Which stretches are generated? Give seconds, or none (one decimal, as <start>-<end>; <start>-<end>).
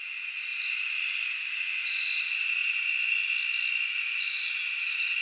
none